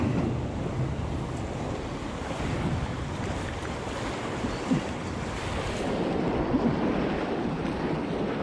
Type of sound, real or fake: real